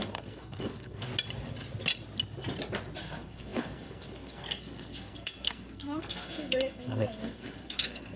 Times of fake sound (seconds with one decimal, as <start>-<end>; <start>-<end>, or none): 0.0-1.1; 3.0-8.2